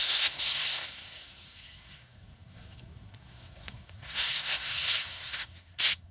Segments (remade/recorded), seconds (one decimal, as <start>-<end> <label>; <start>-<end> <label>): 0.0-6.1 remade